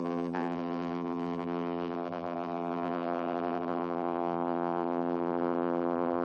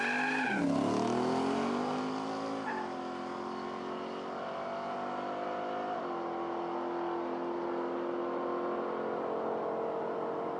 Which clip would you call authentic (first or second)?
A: second